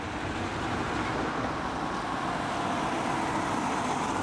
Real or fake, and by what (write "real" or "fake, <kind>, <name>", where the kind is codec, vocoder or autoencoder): real